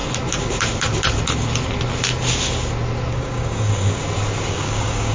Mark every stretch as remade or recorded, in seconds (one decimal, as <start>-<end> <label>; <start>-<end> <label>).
0.0-3.1 recorded; 3.1-4.0 remade; 4.0-4.5 recorded; 4.5-5.1 remade